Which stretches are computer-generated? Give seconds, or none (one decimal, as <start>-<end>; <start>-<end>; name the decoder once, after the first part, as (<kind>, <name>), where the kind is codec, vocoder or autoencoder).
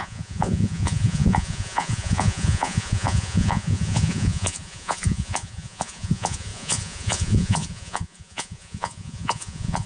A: 0.0-9.9 (vocoder, Vocos)